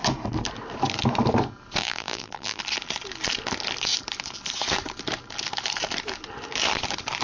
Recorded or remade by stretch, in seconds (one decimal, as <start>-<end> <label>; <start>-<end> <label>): 0.0-1.8 recorded; 1.8-2.6 remade; 2.6-7.2 recorded